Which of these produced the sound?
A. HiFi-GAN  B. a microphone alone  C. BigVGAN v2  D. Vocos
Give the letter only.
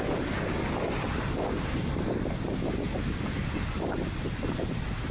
B